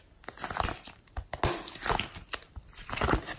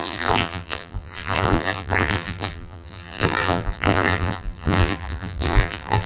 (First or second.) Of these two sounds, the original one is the first